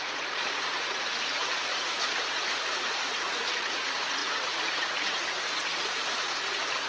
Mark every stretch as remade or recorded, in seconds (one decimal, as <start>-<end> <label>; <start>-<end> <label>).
0.0-6.9 remade